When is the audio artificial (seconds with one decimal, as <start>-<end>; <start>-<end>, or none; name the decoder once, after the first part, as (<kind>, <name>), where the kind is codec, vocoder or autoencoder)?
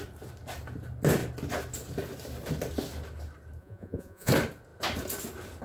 3.6-4.3 (vocoder, Vocos)